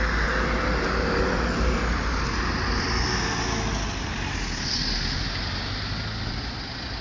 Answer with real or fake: real